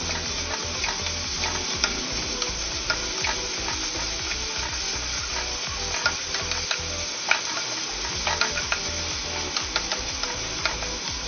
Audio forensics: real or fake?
real